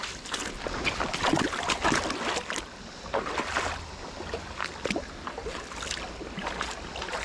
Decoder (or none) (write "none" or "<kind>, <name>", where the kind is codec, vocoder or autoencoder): none